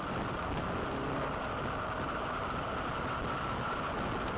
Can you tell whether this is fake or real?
real